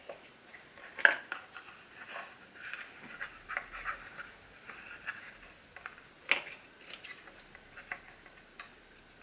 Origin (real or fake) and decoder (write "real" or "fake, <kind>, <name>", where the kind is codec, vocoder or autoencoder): real